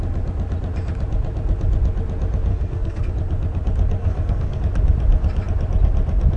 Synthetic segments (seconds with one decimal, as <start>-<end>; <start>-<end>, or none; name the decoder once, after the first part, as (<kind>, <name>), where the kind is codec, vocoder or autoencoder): 2.5-3.1 (codec, SNAC); 4.0-4.6